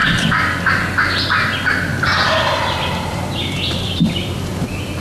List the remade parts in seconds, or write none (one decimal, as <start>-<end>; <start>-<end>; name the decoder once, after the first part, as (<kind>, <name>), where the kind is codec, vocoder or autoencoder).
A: 0.0-0.7 (vocoder, BigVGAN v2); 1.9-5.0